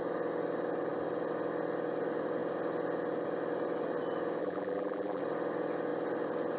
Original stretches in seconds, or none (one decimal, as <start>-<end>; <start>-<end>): 0.0-4.4; 5.2-6.6